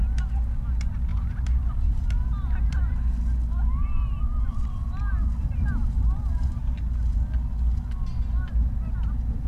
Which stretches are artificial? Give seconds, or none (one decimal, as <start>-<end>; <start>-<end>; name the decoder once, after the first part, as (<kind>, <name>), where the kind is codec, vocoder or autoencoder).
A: 1.1-2.8 (vocoder, BigVGAN v2); 3.8-5.0; 5.4-6.6